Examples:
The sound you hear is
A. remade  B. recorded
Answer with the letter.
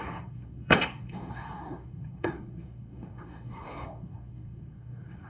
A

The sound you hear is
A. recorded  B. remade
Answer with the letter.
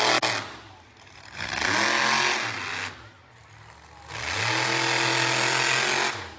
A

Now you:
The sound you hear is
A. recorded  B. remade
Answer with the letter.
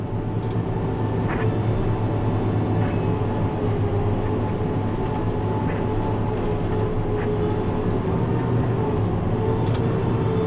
A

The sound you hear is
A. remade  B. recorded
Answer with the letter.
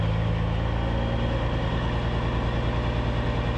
B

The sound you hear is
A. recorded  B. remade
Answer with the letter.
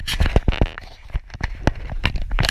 A